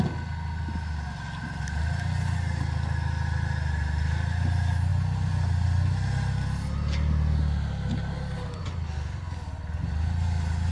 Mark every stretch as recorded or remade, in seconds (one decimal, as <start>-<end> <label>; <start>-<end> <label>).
0.0-10.7 recorded